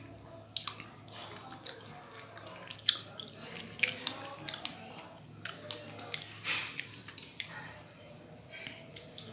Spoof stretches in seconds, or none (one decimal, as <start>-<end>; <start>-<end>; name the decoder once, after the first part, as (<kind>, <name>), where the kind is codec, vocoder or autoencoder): 6.6-8.2 (vocoder, BigVGAN v2)